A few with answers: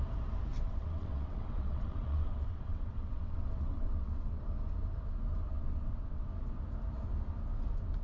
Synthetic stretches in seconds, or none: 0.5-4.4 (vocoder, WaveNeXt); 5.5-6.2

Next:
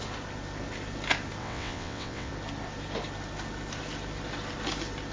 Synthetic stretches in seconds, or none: 1.4-2.3 (vocoder, WaveNeXt)

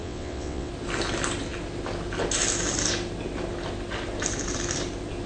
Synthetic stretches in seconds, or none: 0.0-0.7 (vocoder, WaveNeXt)